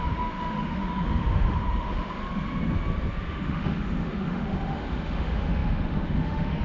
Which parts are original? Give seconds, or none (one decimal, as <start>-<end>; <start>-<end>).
2.2-3.2